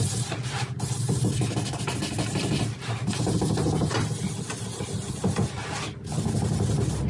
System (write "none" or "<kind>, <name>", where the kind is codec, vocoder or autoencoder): none